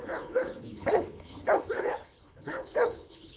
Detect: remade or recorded remade